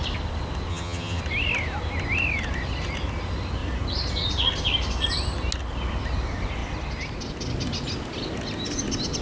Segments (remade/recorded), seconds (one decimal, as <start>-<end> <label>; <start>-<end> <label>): 0.0-0.7 recorded; 0.7-1.2 remade; 1.2-9.2 recorded